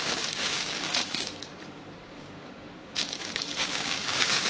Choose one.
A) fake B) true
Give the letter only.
A